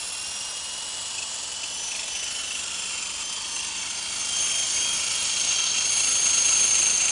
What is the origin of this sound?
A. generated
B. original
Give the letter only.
B